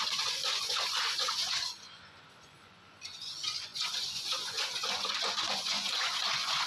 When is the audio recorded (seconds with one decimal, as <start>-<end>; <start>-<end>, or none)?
none